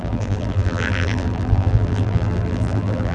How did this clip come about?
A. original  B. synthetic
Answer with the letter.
B